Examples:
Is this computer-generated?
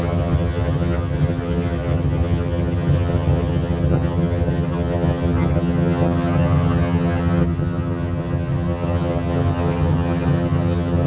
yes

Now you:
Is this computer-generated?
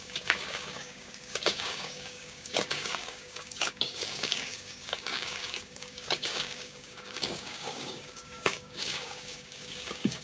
yes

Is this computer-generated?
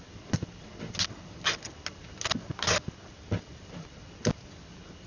no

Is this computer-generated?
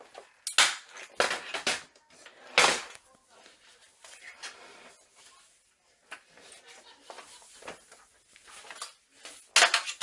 no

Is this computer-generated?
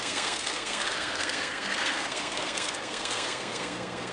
yes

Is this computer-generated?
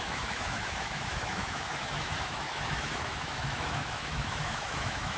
yes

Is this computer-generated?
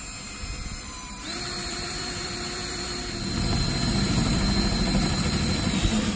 yes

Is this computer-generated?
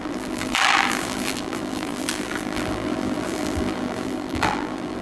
yes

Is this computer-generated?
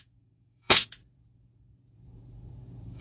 yes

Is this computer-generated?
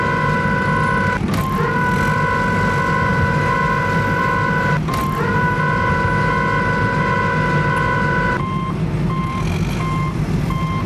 no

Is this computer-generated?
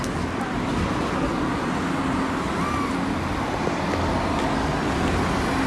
no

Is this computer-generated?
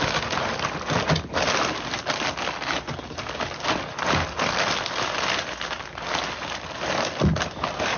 no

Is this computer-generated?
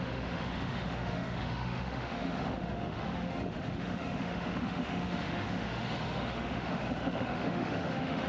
yes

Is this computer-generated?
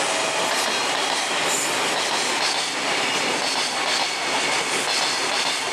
no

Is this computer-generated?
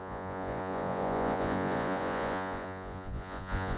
yes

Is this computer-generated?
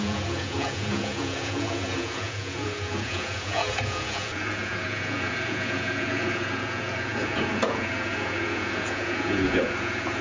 yes